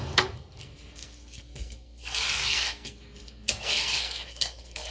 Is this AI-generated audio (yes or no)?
yes